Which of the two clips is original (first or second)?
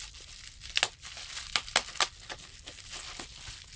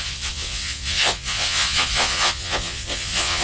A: first